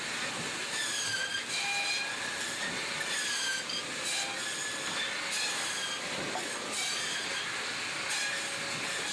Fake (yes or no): no